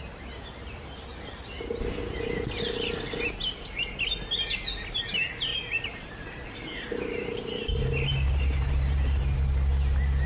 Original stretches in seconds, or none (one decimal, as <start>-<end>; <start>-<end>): 0.0-5.5; 9.2-10.3